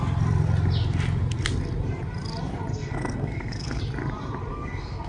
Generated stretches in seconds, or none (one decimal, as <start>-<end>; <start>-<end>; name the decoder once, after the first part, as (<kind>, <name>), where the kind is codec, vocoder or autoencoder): 2.7-3.8 (codec, SNAC); 4.5-5.1